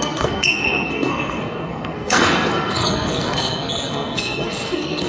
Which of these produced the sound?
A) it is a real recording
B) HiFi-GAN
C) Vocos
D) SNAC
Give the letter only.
D